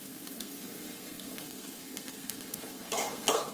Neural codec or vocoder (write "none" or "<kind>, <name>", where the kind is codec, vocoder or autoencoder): codec, SNAC